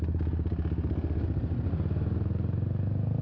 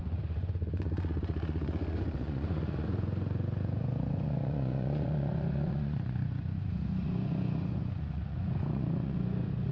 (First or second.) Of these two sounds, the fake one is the second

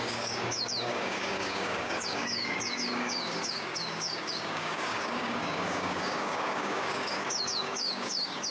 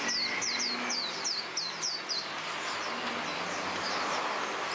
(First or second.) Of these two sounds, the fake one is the first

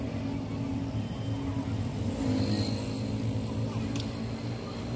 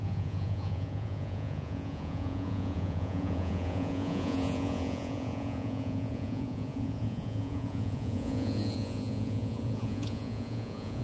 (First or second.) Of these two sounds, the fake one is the second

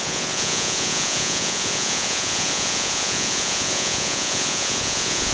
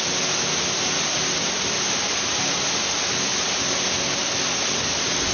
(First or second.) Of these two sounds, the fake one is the first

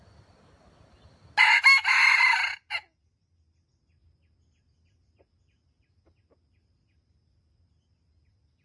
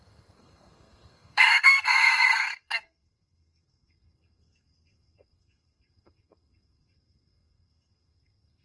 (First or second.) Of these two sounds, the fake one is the second